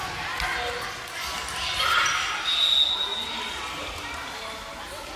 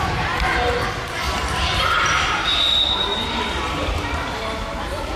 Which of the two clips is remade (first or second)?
second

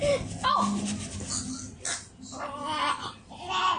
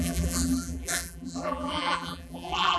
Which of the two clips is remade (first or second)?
second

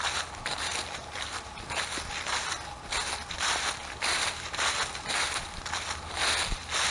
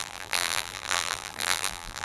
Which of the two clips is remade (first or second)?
second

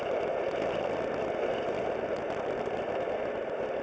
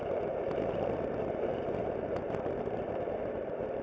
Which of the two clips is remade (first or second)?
second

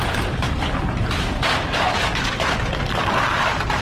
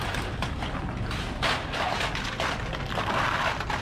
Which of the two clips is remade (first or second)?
first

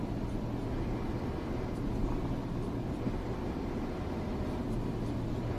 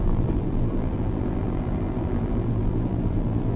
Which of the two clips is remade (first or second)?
second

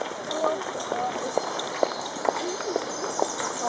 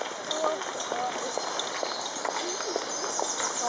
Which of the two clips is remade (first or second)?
first